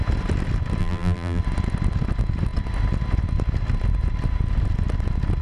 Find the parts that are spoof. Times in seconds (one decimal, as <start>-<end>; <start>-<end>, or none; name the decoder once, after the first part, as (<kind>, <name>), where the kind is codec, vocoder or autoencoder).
0.8-1.4 (vocoder, BigVGAN v2)

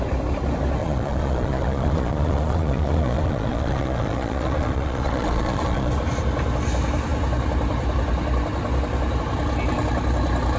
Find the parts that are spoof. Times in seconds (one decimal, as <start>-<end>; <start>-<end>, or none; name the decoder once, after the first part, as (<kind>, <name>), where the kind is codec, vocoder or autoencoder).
0.8-5.9 (vocoder, Vocos)